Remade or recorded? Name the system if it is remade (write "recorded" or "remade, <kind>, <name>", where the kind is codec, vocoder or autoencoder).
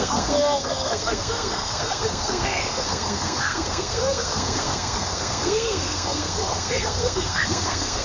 remade, codec, SNAC